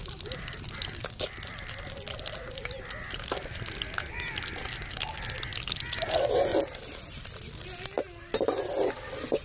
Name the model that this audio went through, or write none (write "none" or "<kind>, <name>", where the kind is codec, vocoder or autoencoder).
none